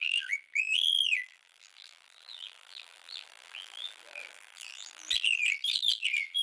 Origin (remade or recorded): remade